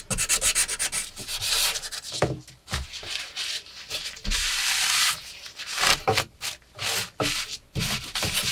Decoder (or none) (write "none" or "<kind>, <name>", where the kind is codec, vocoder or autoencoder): none